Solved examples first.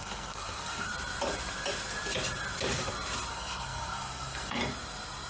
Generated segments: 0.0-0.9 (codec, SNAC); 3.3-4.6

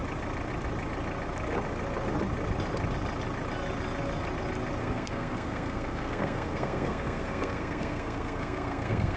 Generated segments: 4.8-9.2 (codec, SNAC)

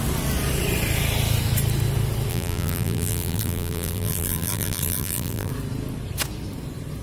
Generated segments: 2.3-5.5 (vocoder, BigVGAN v2)

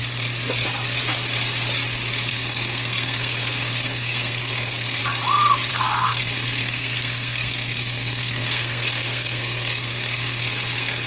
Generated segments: 2.3-5.0 (codec, SNAC); 5.7-11.1

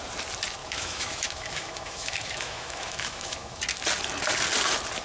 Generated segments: 0.6-3.6 (autoencoder, DAC-VAE)

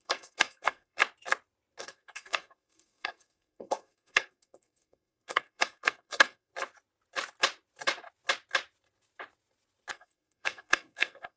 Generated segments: 0.0-1.0 (codec, SNAC); 1.8-6.5; 9.9-11.4

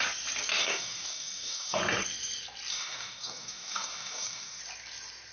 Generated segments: 0.6-1.8 (codec, DAC); 2.7-4.6

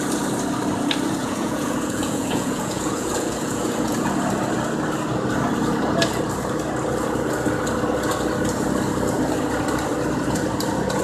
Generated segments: 1.2-4.1 (vocoder, Vocos)